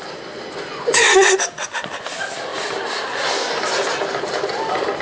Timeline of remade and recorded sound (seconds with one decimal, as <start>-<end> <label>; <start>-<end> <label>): 0.0-0.7 recorded; 0.7-1.4 remade; 1.4-5.0 recorded